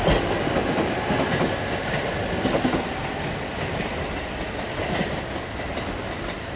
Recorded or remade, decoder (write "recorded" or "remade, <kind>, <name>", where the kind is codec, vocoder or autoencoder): recorded